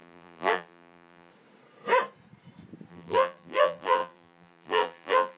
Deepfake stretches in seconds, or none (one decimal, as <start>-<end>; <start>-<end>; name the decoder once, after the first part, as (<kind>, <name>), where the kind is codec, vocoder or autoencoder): 0.0-1.3 (vocoder, BigVGAN v2); 2.9-5.4

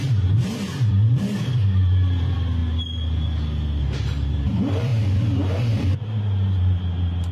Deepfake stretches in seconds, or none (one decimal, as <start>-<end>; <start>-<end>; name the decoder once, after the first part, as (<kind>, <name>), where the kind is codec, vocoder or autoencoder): 0.0-2.6 (vocoder, BigVGAN v2); 3.8-4.9; 5.6-7.3

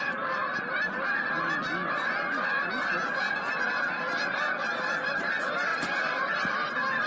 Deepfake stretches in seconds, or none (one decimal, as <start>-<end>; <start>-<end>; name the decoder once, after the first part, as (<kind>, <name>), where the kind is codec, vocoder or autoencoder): 5.7-7.1 (vocoder, BigVGAN v2)

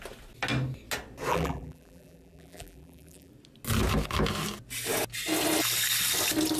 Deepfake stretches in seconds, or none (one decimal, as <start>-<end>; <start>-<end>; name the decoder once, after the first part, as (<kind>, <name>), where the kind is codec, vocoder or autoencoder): 1.3-3.3 (vocoder, BigVGAN v2)

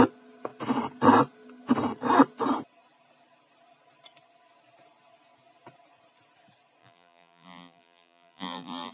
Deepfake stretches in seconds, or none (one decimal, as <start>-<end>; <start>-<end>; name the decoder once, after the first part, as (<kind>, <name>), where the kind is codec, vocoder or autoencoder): 6.8-8.9 (vocoder, BigVGAN v2)